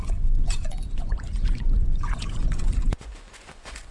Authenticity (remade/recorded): remade